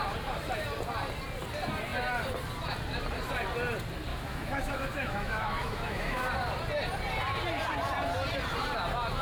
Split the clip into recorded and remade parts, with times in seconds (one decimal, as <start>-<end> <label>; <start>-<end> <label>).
0.0-4.1 recorded; 4.1-6.3 remade; 6.3-9.2 recorded